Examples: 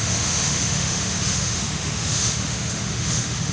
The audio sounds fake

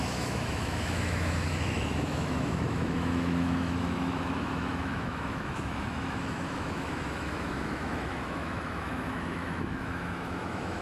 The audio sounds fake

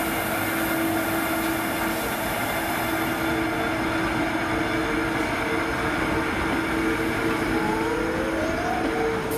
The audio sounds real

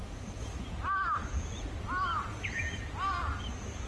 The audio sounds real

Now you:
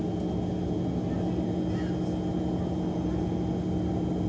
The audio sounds real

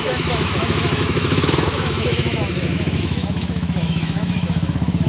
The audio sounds fake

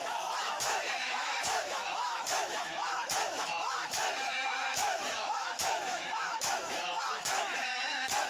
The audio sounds fake